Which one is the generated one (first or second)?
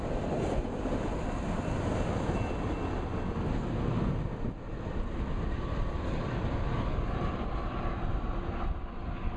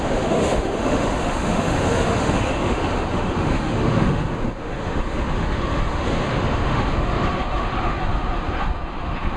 second